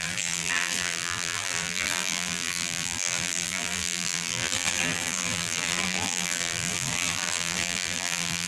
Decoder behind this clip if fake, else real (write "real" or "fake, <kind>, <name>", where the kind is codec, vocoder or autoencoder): fake, vocoder, BigVGAN v2